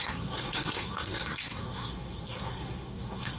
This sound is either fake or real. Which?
fake